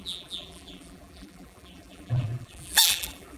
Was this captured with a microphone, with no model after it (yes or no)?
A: no